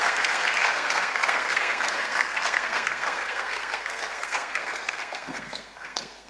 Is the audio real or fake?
fake